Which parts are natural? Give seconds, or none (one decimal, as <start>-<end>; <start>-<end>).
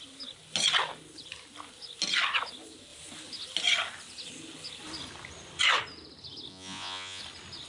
0.0-6.5; 7.2-7.7